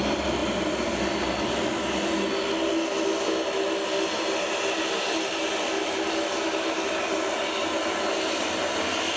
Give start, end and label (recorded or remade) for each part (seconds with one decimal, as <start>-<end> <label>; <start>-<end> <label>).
0.0-9.2 recorded